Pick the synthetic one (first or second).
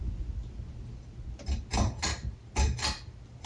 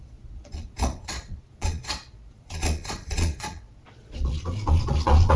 second